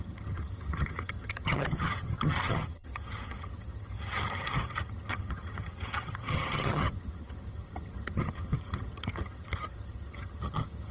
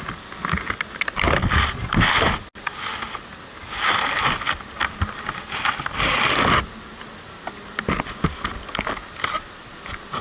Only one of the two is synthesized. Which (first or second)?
first